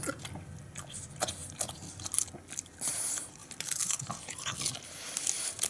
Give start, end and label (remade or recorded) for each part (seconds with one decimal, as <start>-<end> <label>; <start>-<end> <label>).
0.0-5.7 recorded